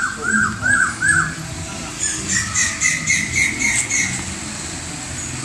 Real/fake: real